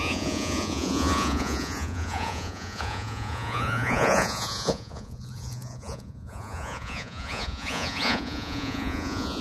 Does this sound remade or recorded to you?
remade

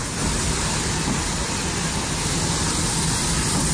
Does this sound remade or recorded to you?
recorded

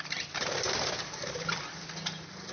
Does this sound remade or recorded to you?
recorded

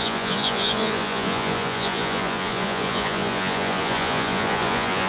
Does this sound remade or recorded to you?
remade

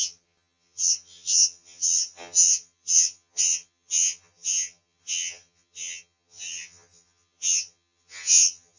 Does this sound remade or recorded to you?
remade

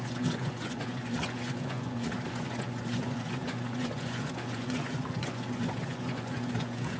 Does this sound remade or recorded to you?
remade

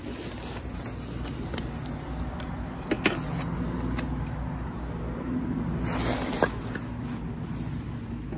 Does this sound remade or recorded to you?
recorded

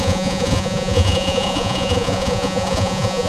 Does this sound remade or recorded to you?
remade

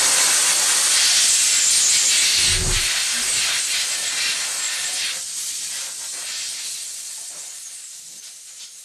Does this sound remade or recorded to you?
recorded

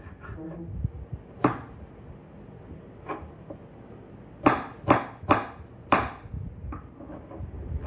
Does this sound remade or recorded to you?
recorded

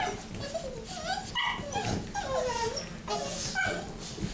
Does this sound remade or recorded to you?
recorded